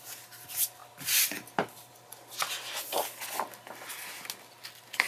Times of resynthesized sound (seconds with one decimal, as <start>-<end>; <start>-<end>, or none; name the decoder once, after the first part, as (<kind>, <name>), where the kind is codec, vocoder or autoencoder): none